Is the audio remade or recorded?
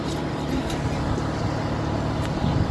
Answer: recorded